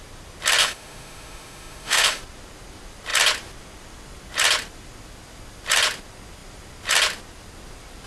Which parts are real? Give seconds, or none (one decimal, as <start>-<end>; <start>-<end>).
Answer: 0.0-0.6; 2.2-8.1

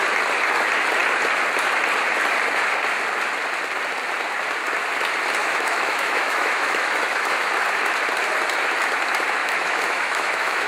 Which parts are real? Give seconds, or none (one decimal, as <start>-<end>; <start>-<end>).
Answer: 0.0-5.4; 7.5-9.4